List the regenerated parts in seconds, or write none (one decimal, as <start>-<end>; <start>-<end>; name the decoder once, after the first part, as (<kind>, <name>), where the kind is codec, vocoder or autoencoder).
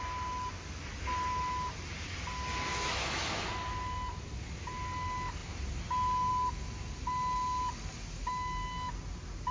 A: 2.7-3.5 (autoencoder, DAC-VAE)